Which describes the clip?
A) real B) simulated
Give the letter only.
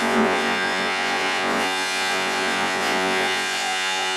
B